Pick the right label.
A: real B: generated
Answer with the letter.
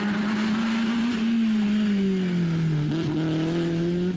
A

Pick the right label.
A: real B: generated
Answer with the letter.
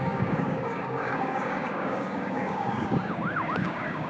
B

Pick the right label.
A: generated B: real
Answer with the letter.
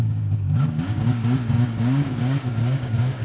A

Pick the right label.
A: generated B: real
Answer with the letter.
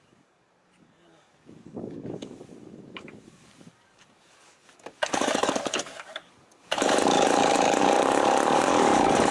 A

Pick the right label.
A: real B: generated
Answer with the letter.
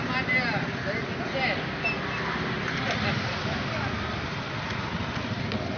A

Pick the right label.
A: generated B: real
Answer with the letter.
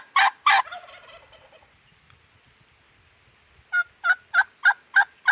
B